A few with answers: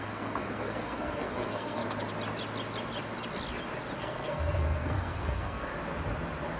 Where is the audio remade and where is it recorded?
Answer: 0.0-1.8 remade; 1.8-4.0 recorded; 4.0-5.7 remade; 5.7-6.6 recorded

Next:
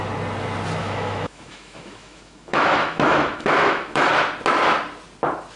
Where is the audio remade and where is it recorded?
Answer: 0.0-0.8 recorded; 0.8-4.1 remade; 4.1-5.6 recorded

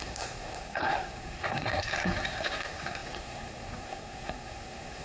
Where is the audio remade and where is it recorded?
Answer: 0.0-5.0 remade

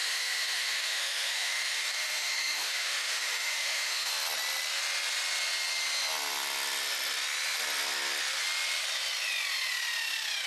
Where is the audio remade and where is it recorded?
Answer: 0.0-4.1 remade; 4.1-10.5 recorded